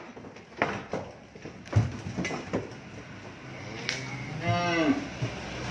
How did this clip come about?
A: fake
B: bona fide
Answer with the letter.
B